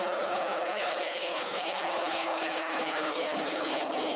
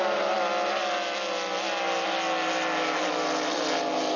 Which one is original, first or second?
second